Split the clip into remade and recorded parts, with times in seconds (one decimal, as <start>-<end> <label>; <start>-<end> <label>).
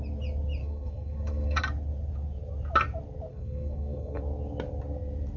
0.0-0.6 recorded; 0.6-1.6 remade; 1.6-3.3 recorded; 3.3-4.2 remade; 4.2-5.4 recorded